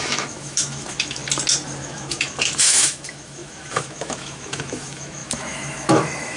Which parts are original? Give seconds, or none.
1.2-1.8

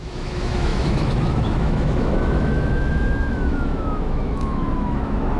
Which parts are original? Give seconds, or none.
none

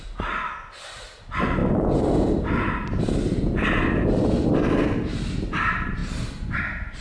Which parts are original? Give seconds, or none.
0.0-7.0

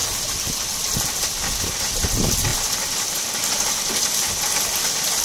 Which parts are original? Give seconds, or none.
0.0-5.2

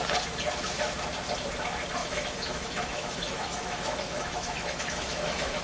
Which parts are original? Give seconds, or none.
0.0-2.0